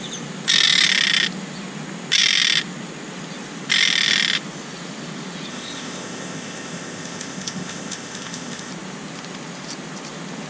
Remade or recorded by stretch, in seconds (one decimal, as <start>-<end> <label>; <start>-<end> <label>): 0.0-5.5 recorded; 5.5-8.7 remade; 8.7-10.5 recorded